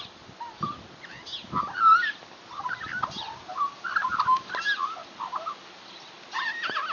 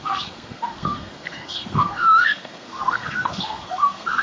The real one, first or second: first